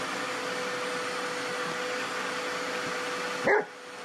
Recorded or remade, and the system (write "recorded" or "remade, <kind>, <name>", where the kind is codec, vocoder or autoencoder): recorded